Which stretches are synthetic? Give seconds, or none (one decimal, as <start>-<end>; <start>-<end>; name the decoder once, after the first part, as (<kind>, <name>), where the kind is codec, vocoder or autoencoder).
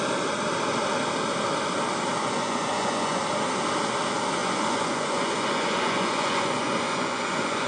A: 2.2-3.2 (vocoder, Vocos); 4.4-7.7